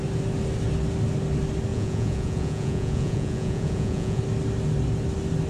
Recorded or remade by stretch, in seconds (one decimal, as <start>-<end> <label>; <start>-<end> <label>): 0.0-1.7 recorded; 1.7-4.2 remade; 4.2-5.5 recorded